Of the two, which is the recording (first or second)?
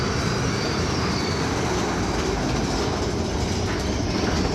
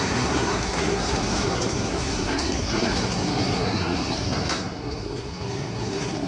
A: first